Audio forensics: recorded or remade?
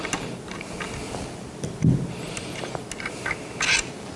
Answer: recorded